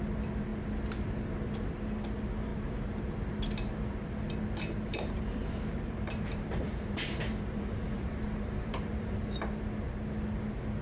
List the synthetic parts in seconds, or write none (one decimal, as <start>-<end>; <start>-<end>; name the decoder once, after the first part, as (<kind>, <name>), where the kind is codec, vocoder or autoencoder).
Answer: 4.9-9.3 (vocoder, BigVGAN v2)